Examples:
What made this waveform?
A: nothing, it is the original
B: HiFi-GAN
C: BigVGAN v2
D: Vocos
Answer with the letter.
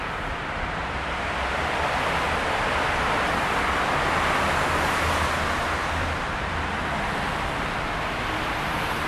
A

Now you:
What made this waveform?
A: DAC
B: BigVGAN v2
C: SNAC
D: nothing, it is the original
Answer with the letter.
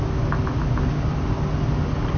D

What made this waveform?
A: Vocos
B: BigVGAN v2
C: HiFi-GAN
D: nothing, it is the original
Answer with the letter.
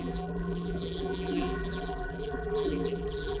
B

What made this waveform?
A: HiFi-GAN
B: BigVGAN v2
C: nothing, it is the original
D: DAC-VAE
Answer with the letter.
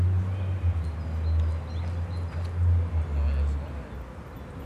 C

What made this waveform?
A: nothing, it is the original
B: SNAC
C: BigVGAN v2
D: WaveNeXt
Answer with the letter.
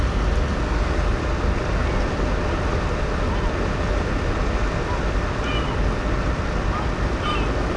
A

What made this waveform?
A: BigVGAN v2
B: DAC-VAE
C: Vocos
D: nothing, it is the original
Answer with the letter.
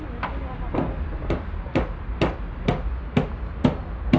D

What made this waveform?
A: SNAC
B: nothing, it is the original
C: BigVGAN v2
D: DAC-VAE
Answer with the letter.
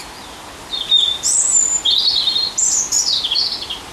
B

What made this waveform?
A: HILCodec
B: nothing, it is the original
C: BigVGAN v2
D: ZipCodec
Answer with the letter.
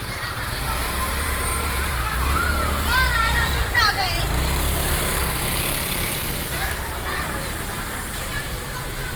C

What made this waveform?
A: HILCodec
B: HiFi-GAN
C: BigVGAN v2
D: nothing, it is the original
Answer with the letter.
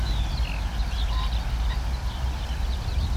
D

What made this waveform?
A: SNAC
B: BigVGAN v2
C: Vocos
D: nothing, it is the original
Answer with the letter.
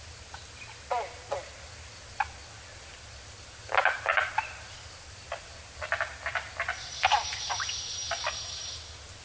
D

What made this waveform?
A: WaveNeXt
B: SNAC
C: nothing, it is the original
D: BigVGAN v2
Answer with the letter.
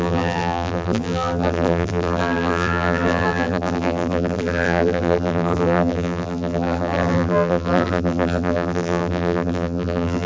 D